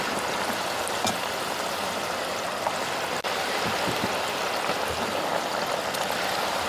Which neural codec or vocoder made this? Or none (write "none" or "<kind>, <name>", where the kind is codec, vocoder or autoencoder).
none